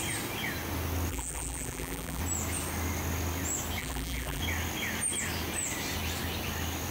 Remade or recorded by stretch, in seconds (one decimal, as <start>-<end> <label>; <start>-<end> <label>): 0.0-1.1 recorded; 1.1-2.2 remade; 2.2-3.8 recorded; 3.8-4.4 remade; 4.4-6.9 recorded